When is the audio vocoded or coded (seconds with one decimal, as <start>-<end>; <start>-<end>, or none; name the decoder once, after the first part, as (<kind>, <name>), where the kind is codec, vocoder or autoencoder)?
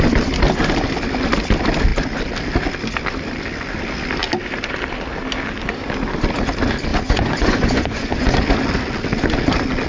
6.9-8.3 (vocoder, Vocos)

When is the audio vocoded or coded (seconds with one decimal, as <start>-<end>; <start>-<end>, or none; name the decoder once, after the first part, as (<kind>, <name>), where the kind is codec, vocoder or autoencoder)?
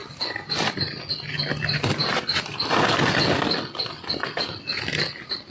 none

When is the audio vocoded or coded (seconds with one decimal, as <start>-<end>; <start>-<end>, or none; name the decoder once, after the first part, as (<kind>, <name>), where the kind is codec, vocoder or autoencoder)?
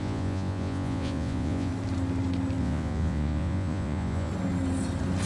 0.0-1.7 (vocoder, Vocos); 2.6-4.3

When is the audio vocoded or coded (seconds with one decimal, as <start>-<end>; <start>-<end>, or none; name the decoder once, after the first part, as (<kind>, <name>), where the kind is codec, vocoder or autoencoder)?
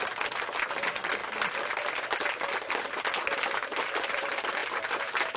none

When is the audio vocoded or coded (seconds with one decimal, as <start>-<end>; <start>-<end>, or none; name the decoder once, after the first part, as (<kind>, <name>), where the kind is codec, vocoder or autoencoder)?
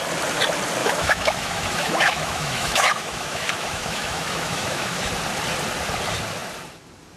0.8-5.1 (autoencoder, DAC-VAE)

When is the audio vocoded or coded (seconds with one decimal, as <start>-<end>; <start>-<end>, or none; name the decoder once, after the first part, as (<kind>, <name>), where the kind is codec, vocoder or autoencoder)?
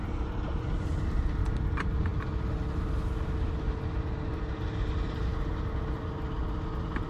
none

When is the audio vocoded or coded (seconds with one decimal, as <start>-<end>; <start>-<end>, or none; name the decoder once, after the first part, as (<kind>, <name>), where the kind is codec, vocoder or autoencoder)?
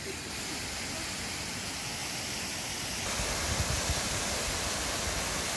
none